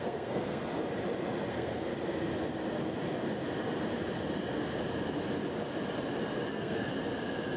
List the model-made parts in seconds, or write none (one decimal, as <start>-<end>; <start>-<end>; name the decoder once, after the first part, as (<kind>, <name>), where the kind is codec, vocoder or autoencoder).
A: 0.0-0.6 (codec, SNAC); 1.5-1.9; 6.5-6.9